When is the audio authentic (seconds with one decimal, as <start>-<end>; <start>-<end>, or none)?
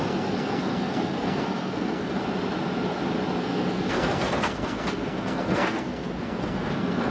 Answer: 2.2-3.4